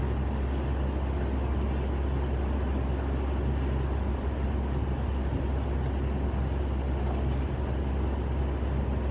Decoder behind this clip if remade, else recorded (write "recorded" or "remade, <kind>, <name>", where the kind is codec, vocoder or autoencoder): recorded